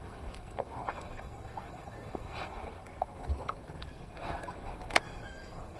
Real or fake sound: fake